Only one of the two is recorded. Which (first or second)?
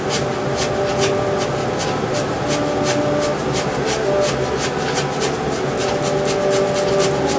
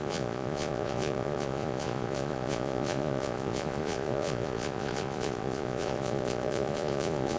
first